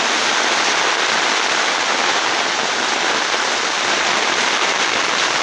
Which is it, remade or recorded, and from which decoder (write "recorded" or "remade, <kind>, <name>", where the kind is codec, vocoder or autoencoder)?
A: recorded